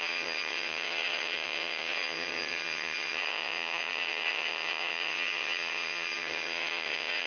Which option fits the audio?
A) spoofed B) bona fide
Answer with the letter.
A